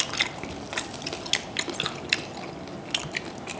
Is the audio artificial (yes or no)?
no